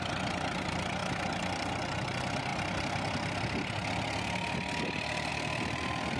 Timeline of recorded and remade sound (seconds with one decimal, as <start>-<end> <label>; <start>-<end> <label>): 0.0-6.2 recorded